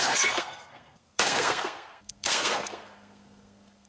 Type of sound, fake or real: fake